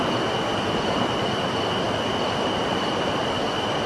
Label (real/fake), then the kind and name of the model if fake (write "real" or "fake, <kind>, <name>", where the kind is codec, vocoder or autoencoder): real